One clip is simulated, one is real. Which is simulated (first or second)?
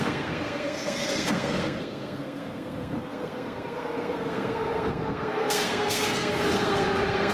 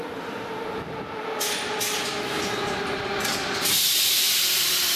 first